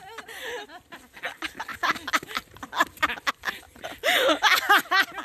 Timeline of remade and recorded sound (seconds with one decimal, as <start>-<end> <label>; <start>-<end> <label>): 0.0-5.2 recorded